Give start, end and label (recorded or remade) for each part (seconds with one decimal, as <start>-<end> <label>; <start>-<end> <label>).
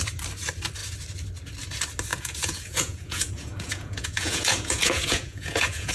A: 0.0-2.1 recorded; 2.1-5.9 remade